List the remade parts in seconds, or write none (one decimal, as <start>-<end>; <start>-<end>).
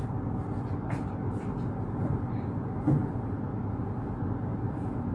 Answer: 3.0-3.5; 4.5-5.1